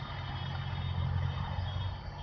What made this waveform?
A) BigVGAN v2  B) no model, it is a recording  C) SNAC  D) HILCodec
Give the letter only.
B